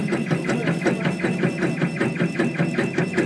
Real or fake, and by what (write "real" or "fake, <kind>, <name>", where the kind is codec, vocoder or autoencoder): real